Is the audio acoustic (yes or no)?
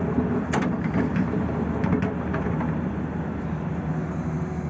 yes